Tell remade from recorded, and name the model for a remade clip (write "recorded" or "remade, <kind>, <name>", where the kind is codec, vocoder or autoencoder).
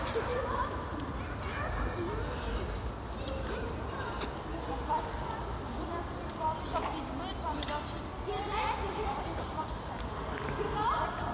recorded